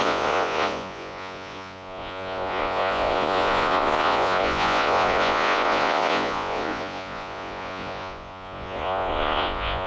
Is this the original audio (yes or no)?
no